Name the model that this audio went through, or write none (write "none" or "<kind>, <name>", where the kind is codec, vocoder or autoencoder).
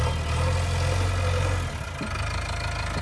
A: none